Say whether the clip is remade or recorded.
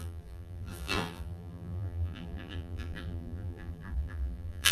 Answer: remade